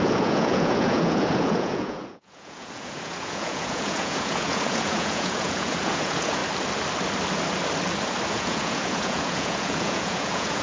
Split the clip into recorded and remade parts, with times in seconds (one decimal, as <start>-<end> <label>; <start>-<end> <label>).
0.0-6.4 remade; 6.4-8.3 recorded; 8.3-10.6 remade